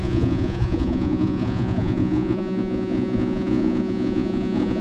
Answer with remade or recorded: remade